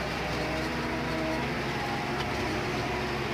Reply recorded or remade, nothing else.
recorded